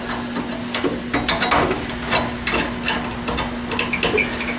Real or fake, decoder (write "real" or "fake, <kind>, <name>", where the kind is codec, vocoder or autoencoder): real